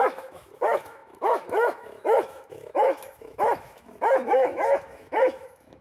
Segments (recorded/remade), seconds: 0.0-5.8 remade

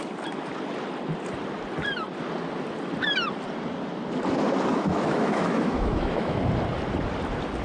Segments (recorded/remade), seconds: 0.0-4.7 recorded; 4.7-6.4 remade; 6.4-7.6 recorded

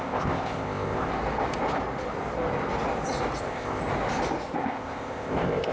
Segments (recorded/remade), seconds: 0.0-1.1 remade; 1.1-3.4 recorded; 3.4-3.8 remade; 3.8-4.6 recorded; 4.6-5.7 remade

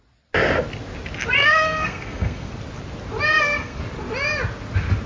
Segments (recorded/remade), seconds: 0.0-1.4 recorded; 1.4-2.5 remade; 2.5-3.3 recorded; 3.3-3.8 remade; 3.8-5.1 recorded

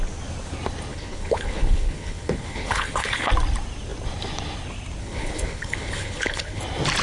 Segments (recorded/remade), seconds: 0.0-0.9 recorded; 0.9-3.3 remade; 3.3-5.0 recorded; 5.0-6.6 remade; 6.6-7.0 recorded

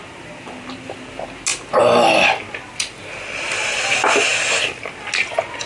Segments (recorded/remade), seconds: 0.0-5.7 recorded

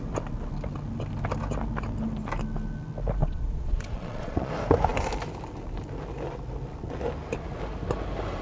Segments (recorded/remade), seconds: 0.0-3.2 recorded; 3.2-4.5 remade; 4.5-8.4 recorded